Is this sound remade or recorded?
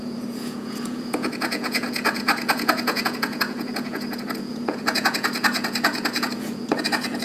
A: remade